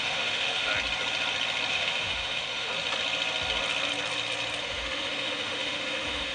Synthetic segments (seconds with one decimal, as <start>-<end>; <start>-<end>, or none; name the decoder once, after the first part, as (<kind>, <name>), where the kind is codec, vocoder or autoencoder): 0.0-0.7 (autoencoder, DAC-VAE); 1.7-2.7; 4.6-6.3